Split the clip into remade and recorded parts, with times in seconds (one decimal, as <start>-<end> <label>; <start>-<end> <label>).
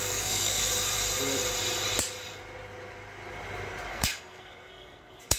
0.0-0.7 remade; 0.7-3.9 recorded; 3.9-5.4 remade